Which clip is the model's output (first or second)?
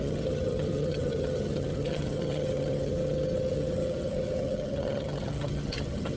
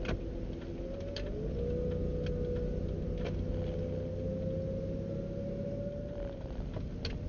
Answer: first